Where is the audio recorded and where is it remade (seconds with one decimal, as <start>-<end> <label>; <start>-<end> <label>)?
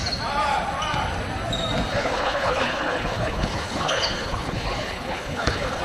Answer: 0.0-1.9 recorded; 1.9-5.8 remade